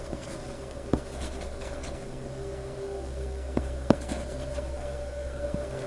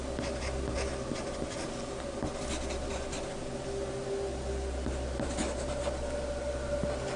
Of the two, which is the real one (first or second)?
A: second